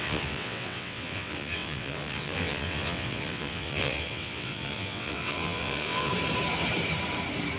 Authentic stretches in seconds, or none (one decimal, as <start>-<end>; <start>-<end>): 6.1-7.6